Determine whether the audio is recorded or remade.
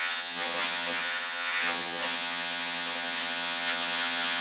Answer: remade